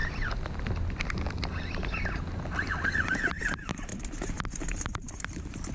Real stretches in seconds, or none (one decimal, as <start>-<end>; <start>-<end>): 0.0-3.4